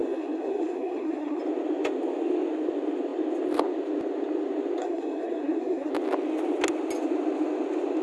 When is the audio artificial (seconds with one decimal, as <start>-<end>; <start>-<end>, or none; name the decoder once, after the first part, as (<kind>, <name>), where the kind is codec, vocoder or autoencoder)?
0.0-1.4 (codec, SNAC); 4.8-5.9

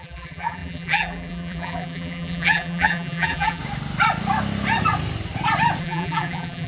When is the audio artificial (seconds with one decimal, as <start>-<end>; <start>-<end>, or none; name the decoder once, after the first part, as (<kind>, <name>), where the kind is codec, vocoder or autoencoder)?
0.0-3.6 (vocoder, BigVGAN v2); 5.8-6.7

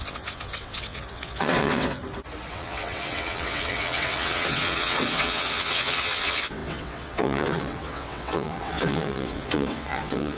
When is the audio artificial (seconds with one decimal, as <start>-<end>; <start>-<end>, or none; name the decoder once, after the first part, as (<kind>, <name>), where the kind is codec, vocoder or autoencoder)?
0.0-2.0 (vocoder, WaveNeXt); 2.5-10.4

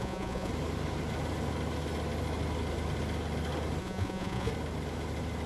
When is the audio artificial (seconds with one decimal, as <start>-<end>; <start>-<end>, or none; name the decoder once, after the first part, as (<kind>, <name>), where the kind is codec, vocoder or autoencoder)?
0.0-0.5 (vocoder, Vocos); 3.8-4.5

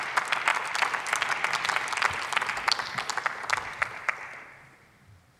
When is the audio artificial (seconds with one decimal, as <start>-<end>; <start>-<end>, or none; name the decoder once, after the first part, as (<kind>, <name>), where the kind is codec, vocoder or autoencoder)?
none

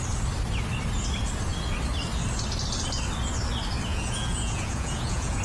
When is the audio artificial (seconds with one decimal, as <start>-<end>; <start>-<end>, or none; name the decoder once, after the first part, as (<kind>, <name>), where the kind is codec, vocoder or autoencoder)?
3.9-5.4 (vocoder, Vocos)